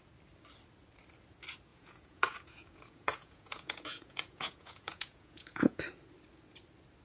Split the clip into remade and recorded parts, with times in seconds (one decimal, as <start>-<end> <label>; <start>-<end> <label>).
0.0-1.7 recorded; 1.7-5.8 remade; 5.8-7.0 recorded